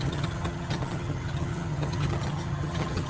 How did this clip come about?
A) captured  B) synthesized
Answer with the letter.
B